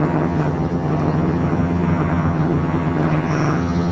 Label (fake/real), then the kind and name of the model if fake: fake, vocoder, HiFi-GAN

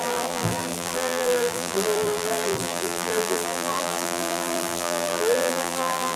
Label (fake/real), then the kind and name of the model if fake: fake, vocoder, BigVGAN v2